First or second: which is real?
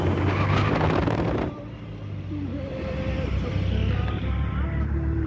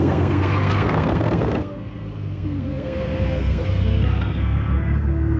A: first